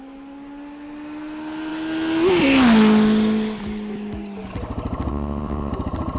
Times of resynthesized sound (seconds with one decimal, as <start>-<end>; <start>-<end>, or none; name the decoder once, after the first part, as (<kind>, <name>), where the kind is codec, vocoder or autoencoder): 5.1-5.7 (vocoder, WaveNeXt)